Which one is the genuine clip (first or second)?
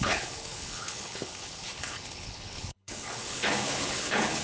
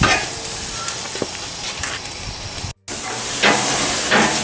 second